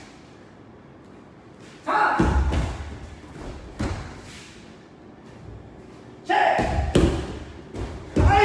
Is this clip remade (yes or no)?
no